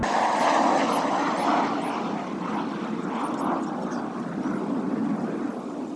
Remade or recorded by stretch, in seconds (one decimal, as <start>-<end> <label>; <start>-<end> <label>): 0.0-6.0 recorded